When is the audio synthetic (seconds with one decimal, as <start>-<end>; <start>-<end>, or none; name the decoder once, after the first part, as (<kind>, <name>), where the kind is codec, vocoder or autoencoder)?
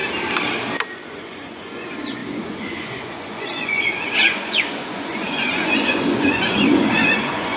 0.9-7.6 (vocoder, Vocos)